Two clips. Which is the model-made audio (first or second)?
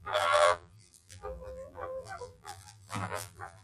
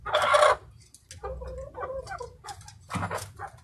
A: first